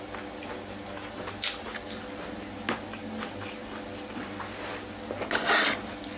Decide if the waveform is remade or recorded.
recorded